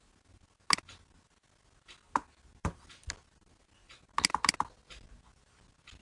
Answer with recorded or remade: recorded